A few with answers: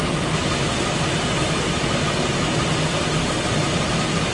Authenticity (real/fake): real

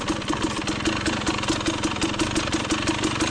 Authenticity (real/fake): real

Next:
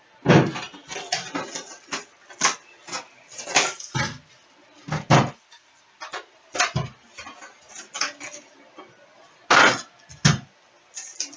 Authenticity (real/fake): real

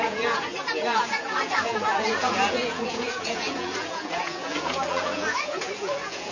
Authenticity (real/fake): fake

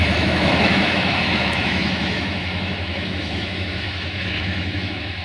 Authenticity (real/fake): fake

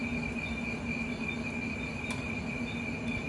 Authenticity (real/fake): real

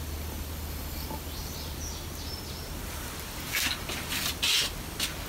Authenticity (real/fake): real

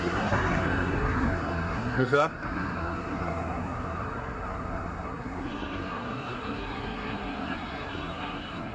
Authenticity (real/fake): fake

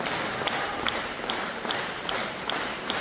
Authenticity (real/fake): fake